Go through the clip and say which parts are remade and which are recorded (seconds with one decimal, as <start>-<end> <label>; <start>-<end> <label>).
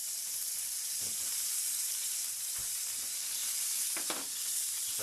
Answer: 0.0-2.7 remade; 2.7-3.4 recorded; 3.4-5.0 remade